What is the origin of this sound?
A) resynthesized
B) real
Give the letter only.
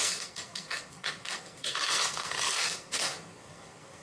A